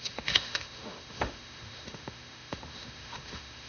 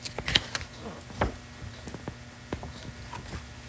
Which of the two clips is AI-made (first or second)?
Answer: first